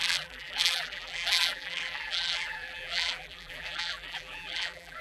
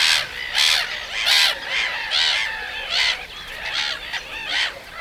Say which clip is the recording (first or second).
second